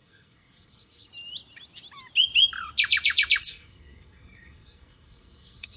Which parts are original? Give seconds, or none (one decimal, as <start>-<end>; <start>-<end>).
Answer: 1.1-3.4